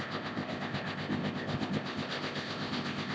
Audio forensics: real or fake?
fake